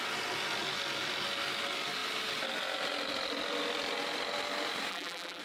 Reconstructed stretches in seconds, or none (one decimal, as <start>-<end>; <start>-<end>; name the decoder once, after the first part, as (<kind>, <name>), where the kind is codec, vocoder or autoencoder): 4.9-5.4 (vocoder, BigVGAN v2)